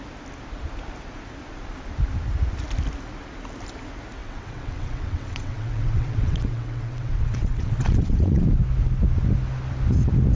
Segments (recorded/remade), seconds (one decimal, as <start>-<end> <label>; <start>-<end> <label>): 0.0-4.2 recorded; 4.2-8.4 remade; 8.4-10.4 recorded